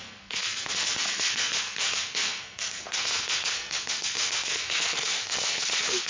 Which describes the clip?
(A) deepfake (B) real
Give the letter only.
A